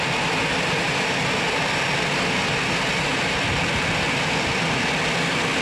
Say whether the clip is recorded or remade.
recorded